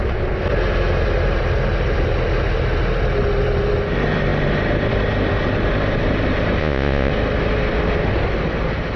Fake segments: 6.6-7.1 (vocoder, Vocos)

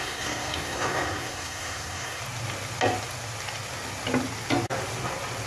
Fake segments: 0.0-2.2 (codec, SNAC)

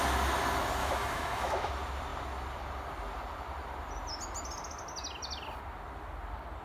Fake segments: 0.8-1.7 (autoencoder, DAC-VAE)

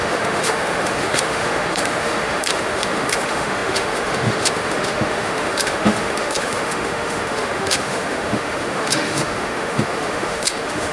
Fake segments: 0.0-10.9 (autoencoder, DAC-VAE)

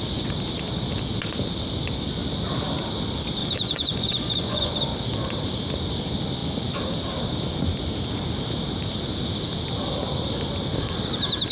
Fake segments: 3.4-4.7 (vocoder, Vocos)

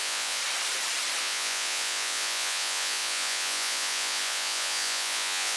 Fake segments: 0.0-0.4 (vocoder, Vocos); 1.2-5.6